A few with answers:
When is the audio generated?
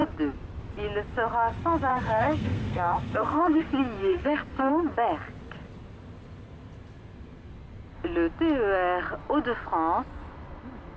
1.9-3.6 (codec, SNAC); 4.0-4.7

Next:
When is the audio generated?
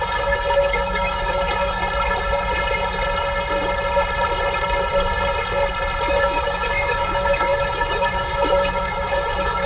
0.0-1.8 (autoencoder, DAC-VAE); 6.1-9.7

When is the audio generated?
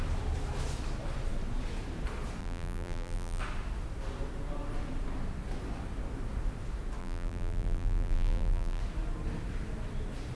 2.4-3.4 (vocoder, BigVGAN v2); 7.0-8.8